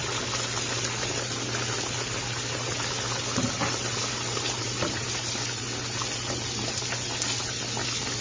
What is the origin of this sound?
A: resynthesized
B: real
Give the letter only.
B